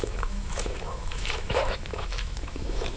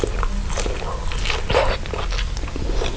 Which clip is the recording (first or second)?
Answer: second